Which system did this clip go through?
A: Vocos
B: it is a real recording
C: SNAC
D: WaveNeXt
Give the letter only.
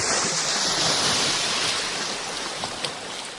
B